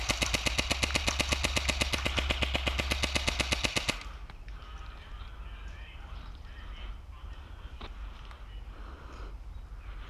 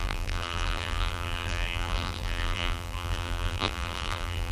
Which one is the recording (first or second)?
first